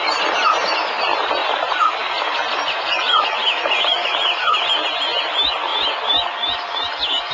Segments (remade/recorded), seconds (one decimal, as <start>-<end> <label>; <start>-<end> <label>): 0.0-1.4 recorded; 1.4-4.7 remade; 4.7-7.3 recorded